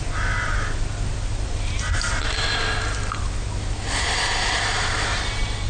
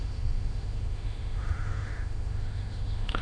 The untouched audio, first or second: first